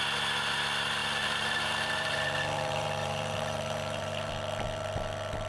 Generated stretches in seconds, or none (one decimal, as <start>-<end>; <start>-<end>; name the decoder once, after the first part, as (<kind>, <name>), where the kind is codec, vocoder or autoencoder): 1.0-4.3 (vocoder, BigVGAN v2)